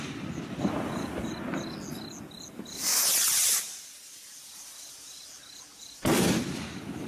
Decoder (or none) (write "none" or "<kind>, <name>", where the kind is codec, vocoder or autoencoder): none